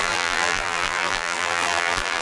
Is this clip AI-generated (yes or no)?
yes